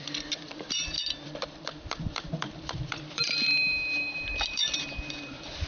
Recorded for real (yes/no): no